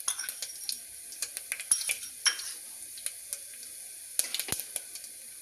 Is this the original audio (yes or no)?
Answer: yes